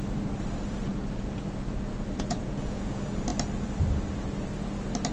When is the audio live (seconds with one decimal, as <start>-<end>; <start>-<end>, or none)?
0.0-0.9; 2.9-5.1